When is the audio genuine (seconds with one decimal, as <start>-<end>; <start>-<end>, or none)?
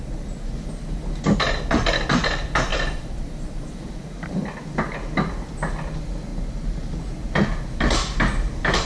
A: 0.0-2.7; 4.0-6.3; 6.9-8.9